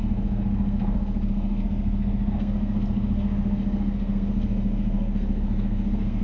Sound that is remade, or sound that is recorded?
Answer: remade